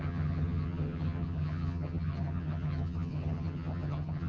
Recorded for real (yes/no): no